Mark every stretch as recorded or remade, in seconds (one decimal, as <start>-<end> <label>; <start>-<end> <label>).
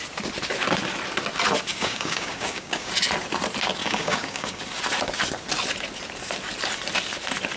0.0-1.7 recorded; 1.7-2.9 remade; 2.9-3.8 recorded; 3.8-4.6 remade; 4.6-7.6 recorded